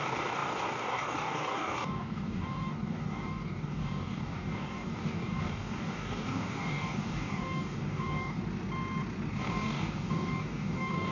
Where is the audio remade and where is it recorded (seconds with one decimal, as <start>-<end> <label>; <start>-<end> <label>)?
0.0-8.4 remade; 8.4-9.3 recorded; 9.3-11.1 remade